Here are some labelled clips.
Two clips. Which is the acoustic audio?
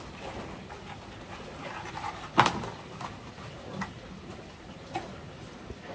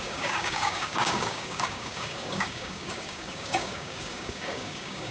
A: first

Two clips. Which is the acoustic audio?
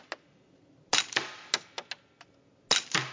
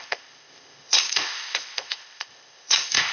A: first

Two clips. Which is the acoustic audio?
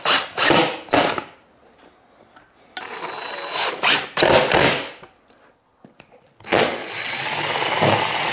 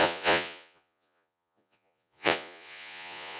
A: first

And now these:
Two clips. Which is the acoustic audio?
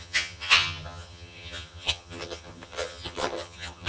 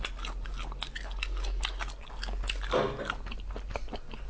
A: second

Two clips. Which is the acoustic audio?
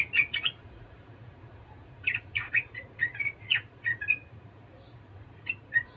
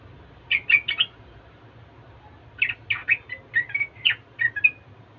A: second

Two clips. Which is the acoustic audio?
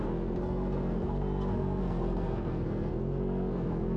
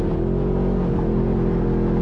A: second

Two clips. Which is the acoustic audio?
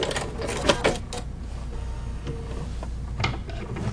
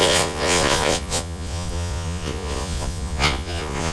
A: first